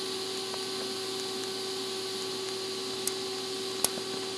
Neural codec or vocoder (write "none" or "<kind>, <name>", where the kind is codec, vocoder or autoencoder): none